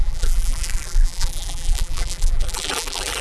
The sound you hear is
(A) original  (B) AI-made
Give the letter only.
B